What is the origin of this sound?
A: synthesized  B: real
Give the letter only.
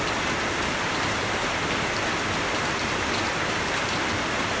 B